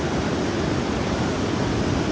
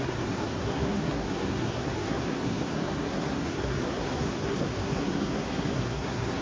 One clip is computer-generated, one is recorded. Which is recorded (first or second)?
first